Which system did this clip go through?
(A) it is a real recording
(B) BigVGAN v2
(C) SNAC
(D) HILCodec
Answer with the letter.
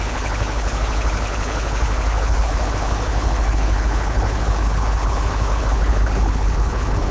D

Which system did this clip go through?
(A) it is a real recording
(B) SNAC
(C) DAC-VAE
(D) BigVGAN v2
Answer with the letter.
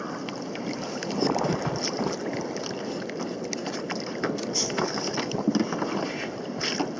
A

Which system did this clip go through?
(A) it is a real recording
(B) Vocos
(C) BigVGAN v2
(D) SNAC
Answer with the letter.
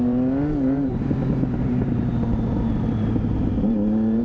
C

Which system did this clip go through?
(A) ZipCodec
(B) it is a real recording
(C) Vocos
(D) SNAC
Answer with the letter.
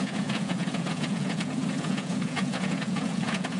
C